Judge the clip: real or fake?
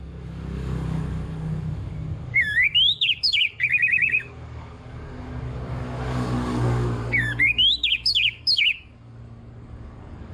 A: fake